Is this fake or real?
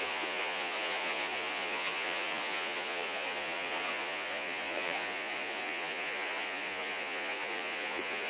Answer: fake